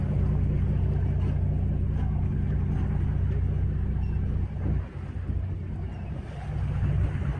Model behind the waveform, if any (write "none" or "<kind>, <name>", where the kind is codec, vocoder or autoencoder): none